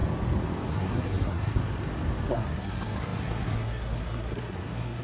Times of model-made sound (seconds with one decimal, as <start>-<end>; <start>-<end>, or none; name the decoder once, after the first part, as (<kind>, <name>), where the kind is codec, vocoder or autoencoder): 0.7-1.6 (codec, SNAC); 2.3-5.0

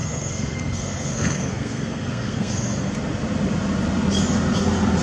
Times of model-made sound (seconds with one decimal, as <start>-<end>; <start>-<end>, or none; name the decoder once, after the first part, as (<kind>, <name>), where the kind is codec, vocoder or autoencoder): 0.0-2.9 (codec, SNAC)